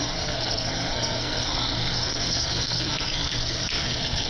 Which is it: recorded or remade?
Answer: remade